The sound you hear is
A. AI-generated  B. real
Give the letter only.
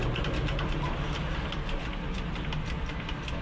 B